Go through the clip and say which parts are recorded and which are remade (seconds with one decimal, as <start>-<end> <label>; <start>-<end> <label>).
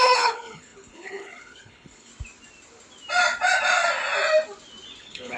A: 0.0-2.1 remade; 2.1-5.0 recorded; 5.0-5.4 remade